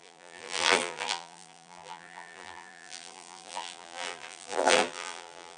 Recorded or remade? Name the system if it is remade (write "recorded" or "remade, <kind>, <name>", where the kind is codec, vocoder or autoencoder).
remade, vocoder, BigVGAN v2